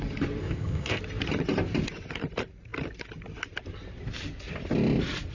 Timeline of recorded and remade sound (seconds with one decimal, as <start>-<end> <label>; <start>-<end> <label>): 0.0-0.4 recorded; 0.4-1.0 remade; 1.0-5.3 recorded